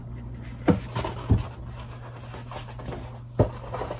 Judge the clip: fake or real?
real